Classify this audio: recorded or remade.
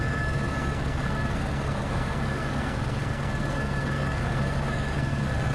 remade